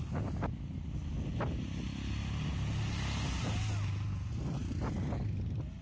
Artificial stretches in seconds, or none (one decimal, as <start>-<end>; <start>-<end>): none